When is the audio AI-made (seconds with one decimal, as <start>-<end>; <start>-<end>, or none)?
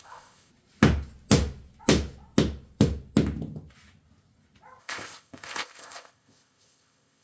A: 0.0-0.5; 4.8-7.2